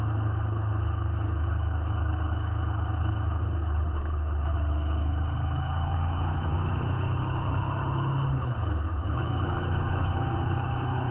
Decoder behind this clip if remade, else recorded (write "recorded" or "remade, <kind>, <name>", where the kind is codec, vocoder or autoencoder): remade, codec, HILCodec